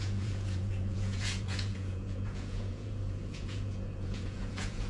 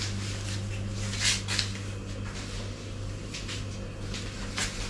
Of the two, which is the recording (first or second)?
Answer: second